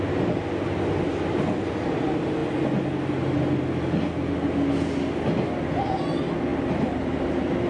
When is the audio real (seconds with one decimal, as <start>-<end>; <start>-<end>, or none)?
0.0-7.7